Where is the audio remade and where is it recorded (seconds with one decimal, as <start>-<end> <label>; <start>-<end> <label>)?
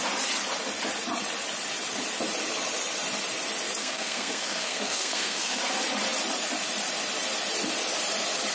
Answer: 0.0-3.8 recorded; 3.8-5.6 remade; 5.6-8.5 recorded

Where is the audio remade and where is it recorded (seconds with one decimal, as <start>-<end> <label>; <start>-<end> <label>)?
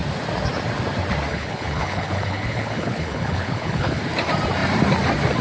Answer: 0.0-1.3 recorded; 1.3-4.0 remade; 4.0-5.4 recorded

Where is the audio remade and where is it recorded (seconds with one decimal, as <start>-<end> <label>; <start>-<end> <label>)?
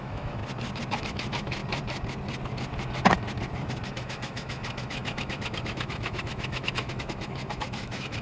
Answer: 0.0-0.4 remade; 0.4-1.0 recorded; 1.0-1.6 remade; 1.6-3.9 recorded; 3.9-8.2 remade